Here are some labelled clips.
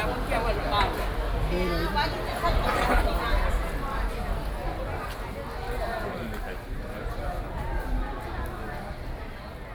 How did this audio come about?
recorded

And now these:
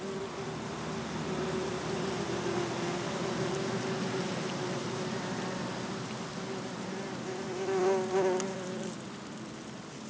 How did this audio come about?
recorded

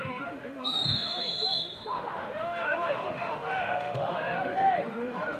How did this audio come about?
remade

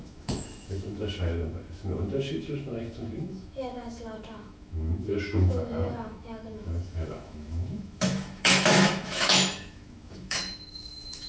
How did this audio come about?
remade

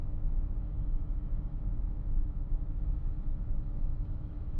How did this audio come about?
remade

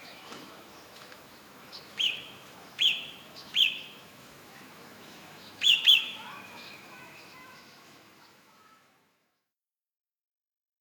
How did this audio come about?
remade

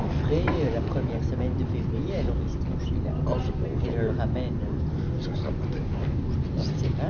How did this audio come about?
recorded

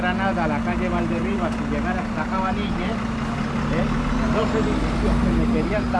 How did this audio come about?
recorded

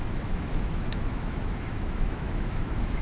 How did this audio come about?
remade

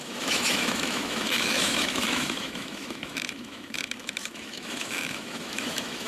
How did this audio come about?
remade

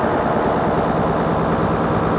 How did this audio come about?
recorded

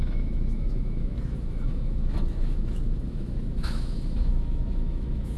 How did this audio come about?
remade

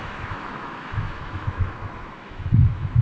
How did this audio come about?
remade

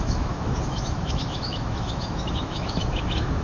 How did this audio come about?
remade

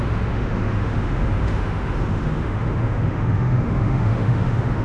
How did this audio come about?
remade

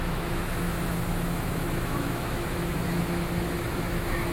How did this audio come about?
remade